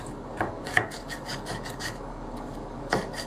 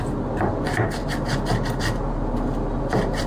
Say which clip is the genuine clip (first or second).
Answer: second